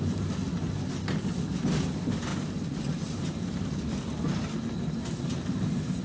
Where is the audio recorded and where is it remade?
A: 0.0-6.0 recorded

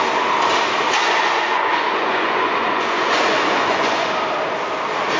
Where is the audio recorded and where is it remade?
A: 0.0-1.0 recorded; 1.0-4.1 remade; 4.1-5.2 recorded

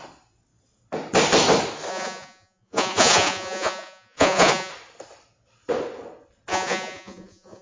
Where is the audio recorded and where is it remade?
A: 0.0-1.9 recorded; 1.9-4.7 remade; 4.7-6.5 recorded; 6.5-7.6 remade

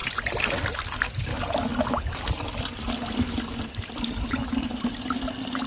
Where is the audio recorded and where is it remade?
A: 0.0-5.7 recorded